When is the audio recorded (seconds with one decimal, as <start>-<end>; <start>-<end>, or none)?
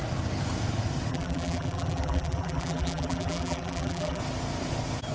0.0-1.1; 4.2-5.1